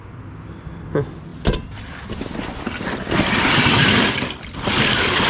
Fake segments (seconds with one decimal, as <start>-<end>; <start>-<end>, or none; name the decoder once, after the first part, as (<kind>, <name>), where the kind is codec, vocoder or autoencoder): 0.0-1.3 (vocoder, BigVGAN v2); 3.2-5.3